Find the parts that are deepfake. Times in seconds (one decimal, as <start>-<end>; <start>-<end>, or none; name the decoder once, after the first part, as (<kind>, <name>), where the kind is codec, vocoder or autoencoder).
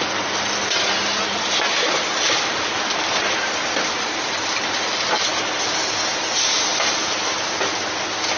none